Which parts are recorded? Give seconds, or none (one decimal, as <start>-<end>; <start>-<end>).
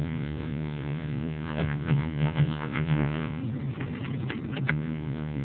3.4-4.7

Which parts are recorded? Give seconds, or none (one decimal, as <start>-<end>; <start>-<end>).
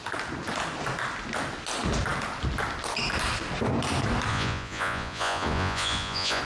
0.0-4.3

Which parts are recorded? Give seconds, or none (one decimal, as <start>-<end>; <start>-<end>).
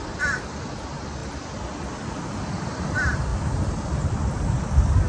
0.0-5.1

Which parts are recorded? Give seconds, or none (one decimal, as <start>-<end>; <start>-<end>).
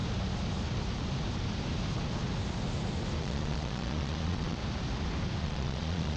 0.0-3.2; 4.6-5.4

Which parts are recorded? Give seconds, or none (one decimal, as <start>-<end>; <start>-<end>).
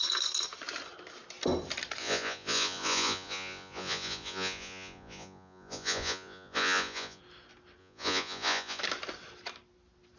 0.0-2.0; 7.2-7.8; 8.8-10.2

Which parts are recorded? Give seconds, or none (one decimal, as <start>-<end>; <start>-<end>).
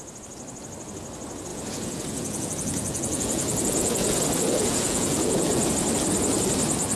0.0-1.5; 5.7-7.0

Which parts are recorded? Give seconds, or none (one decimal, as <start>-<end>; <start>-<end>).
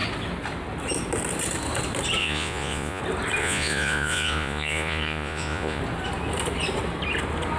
0.0-2.2; 3.0-3.4; 5.8-7.6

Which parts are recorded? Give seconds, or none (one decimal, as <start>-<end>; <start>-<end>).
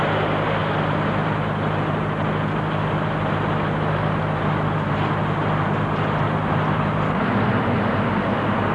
0.0-8.7